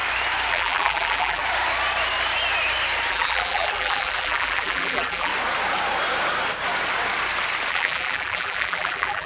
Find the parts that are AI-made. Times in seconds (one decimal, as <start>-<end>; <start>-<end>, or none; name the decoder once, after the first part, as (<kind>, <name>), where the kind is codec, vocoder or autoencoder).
0.5-1.4 (vocoder, BigVGAN v2); 3.1-5.3; 7.7-9.3